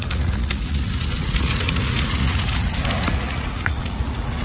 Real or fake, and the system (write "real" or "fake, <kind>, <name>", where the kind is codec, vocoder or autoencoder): fake, vocoder, Vocos